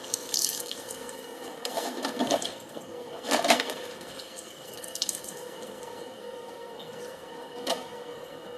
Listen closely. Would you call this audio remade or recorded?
remade